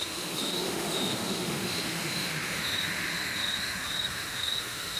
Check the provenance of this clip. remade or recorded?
remade